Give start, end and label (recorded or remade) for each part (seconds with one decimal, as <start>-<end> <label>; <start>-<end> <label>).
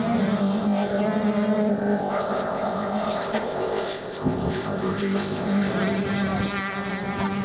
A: 0.0-0.4 recorded; 0.4-1.0 remade; 1.0-1.7 recorded; 1.7-5.7 remade; 5.7-7.4 recorded